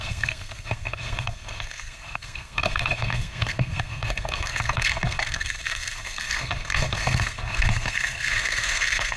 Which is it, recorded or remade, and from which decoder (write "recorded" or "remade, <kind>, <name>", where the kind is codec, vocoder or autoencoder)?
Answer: remade, codec, SNAC